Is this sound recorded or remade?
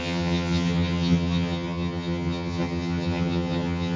remade